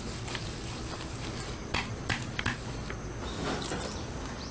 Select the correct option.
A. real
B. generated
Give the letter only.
A